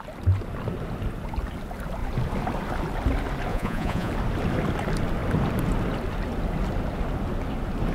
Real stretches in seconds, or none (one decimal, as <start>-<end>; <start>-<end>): 0.0-3.5; 4.1-7.9